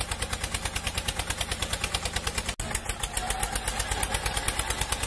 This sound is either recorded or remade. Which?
recorded